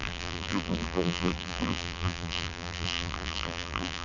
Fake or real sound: fake